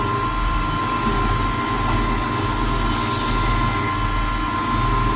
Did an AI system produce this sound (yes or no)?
no